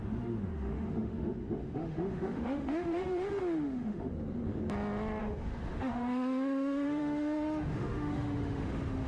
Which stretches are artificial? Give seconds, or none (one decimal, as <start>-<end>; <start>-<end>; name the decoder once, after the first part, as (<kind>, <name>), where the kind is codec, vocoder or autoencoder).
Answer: 0.0-4.1 (autoencoder, DAC-VAE); 5.2-9.1